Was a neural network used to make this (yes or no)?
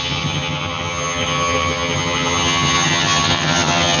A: yes